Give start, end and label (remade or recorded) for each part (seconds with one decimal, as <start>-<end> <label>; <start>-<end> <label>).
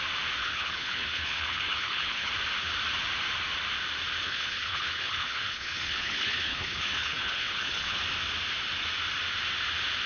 0.0-0.4 recorded; 0.4-2.3 remade; 2.3-4.2 recorded; 4.2-8.0 remade; 8.0-10.1 recorded